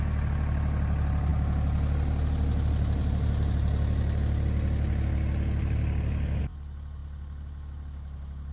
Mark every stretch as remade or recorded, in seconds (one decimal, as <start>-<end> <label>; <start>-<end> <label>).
0.0-8.5 recorded

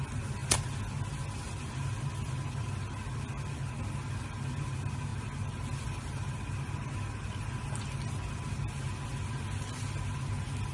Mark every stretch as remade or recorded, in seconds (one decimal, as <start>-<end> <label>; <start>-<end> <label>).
0.0-10.7 recorded